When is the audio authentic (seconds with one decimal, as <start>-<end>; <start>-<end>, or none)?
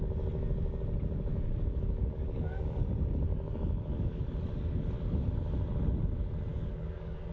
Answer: 0.0-1.3; 2.8-3.3; 4.2-6.5